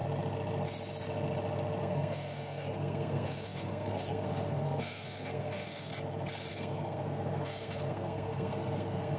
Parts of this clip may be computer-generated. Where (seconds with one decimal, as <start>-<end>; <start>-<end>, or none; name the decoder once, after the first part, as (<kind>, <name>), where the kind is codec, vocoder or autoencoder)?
1.8-5.9 (codec, SNAC); 6.5-9.2